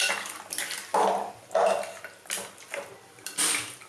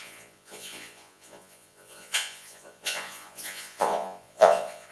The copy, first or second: second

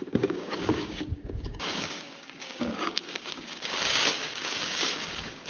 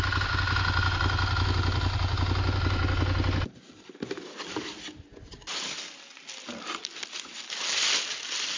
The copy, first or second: first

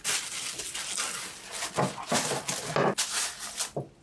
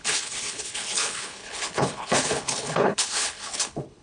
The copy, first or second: second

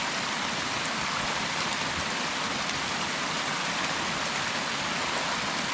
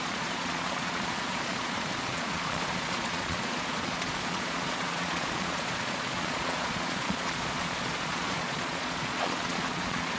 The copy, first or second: second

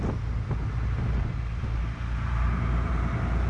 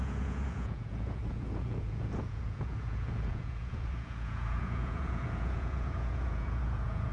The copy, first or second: second